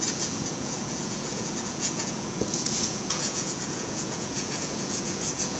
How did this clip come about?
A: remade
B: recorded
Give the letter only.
A